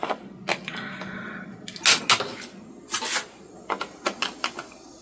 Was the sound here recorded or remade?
recorded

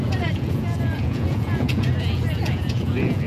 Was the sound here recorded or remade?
remade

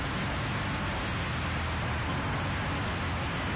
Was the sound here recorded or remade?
recorded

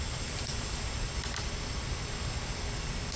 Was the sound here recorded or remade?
recorded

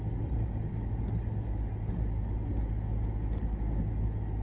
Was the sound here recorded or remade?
recorded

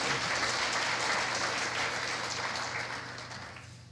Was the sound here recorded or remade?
recorded